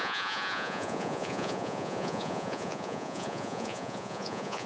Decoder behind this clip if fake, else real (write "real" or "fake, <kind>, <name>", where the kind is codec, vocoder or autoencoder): fake, vocoder, Vocos